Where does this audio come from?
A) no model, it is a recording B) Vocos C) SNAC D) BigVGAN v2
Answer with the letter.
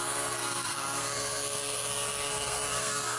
C